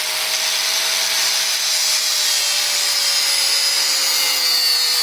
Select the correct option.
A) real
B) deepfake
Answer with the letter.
A